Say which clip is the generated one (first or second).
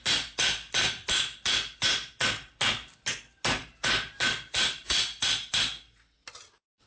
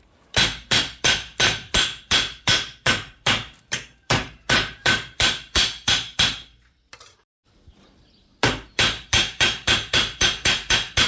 second